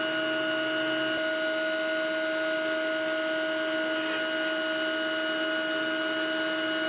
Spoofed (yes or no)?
no